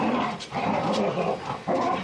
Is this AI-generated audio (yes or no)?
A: yes